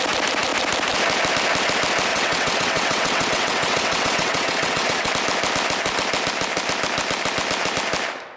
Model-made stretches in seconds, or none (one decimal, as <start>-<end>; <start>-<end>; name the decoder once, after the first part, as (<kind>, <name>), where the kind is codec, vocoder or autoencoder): 2.1-5.1 (vocoder, WaveNeXt)